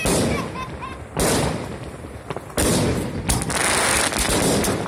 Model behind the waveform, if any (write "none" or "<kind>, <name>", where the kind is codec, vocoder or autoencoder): none